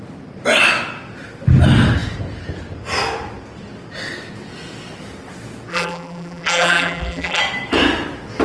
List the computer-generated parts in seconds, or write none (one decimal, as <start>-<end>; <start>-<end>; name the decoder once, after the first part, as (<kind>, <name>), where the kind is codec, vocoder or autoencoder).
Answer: 5.7-7.4 (vocoder, BigVGAN v2)